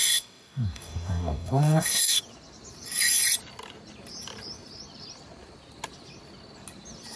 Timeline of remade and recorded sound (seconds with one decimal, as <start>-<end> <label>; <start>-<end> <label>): 0.0-2.2 remade; 2.2-7.2 recorded